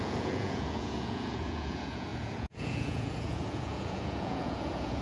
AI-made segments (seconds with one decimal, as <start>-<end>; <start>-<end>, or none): 0.0-5.0